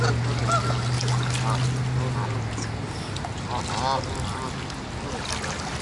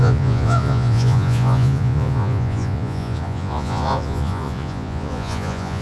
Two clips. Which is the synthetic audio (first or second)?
second